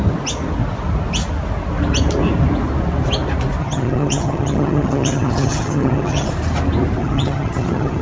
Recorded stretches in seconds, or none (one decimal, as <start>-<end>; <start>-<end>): 0.0-3.6; 6.3-7.0